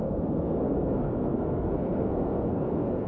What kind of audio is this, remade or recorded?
remade